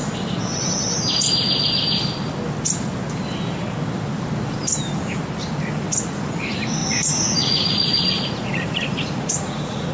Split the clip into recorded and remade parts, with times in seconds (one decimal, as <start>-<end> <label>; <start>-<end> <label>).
0.0-6.8 recorded; 6.8-9.9 remade